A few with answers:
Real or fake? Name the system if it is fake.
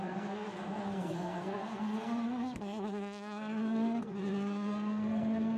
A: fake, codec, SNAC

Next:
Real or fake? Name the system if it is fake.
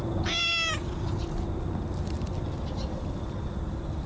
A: real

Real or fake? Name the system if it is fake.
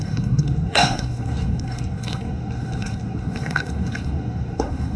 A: fake, codec, SNAC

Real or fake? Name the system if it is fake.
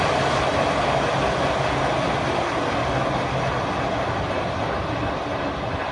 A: real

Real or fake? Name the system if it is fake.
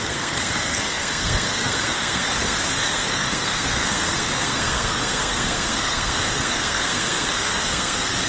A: fake, codec, SNAC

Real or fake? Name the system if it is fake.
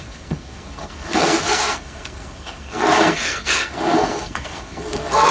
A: fake, codec, SNAC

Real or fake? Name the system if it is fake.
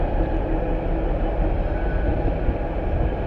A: real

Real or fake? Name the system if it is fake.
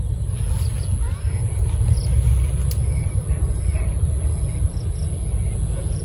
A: real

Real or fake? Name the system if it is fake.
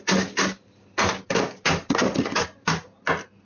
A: real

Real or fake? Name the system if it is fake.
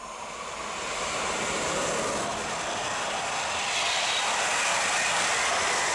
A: real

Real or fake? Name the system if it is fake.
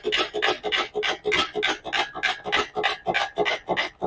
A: real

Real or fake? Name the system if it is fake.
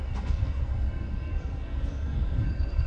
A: fake, codec, SNAC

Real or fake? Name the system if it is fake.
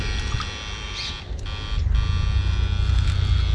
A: real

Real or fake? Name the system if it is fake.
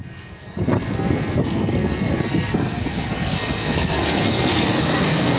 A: fake, codec, SNAC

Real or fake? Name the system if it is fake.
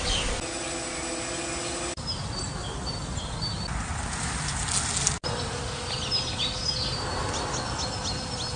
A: real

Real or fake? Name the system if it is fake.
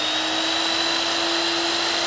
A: real